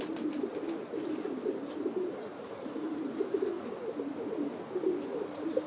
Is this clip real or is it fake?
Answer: real